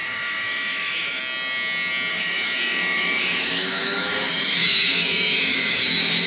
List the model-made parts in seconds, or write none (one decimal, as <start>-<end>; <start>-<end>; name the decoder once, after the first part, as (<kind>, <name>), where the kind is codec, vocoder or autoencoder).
0.0-1.2 (autoencoder, DAC-VAE); 2.1-6.3